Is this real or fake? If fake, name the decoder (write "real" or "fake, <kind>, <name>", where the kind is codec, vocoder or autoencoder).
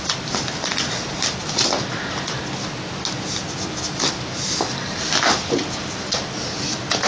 real